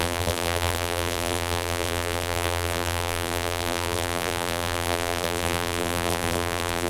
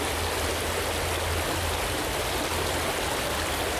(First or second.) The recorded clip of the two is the second